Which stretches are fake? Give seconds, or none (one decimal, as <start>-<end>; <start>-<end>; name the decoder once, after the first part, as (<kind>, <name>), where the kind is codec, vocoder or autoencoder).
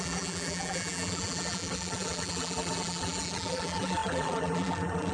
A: 0.0-5.1 (vocoder, BigVGAN v2)